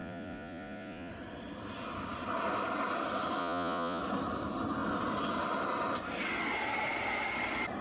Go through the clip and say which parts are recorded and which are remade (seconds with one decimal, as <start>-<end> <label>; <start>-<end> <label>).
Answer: 0.0-1.1 remade; 1.1-3.4 recorded; 3.4-4.0 remade; 4.0-7.8 recorded